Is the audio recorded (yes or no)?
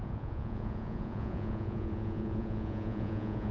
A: no